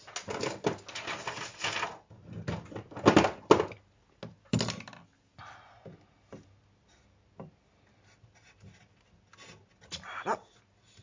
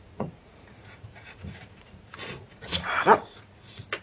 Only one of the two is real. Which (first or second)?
first